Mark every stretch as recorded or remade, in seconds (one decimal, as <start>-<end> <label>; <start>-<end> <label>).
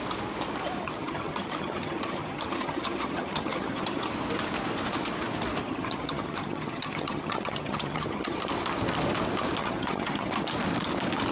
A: 0.0-0.8 recorded; 0.8-4.1 remade; 4.1-5.6 recorded; 5.6-8.4 remade; 8.4-9.6 recorded; 9.6-10.3 remade; 10.3-11.3 recorded